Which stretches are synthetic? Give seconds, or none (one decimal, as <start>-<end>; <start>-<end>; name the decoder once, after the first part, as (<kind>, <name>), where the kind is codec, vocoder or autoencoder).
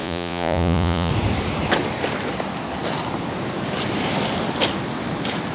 0.0-1.1 (vocoder, Vocos)